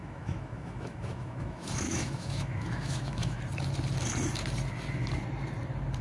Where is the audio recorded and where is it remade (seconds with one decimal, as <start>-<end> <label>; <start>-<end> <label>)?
0.0-3.4 remade; 3.4-6.0 recorded